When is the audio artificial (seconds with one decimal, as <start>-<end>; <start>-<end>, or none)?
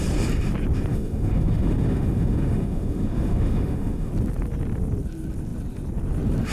0.9-4.1